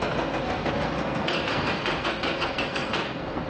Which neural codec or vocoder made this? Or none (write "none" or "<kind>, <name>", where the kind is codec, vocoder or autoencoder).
codec, SNAC